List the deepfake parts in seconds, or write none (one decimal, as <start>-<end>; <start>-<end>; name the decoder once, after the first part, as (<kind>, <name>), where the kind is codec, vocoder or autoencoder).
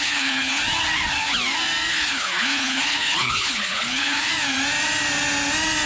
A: 0.0-0.6 (codec, HILCodec); 1.9-4.3